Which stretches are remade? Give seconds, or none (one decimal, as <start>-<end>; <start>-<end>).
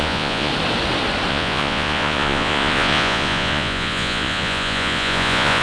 0.0-0.5; 1.3-5.6